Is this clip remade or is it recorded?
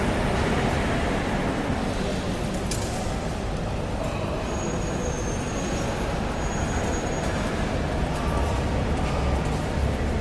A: recorded